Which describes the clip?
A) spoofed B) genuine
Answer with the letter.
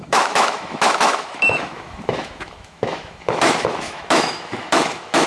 A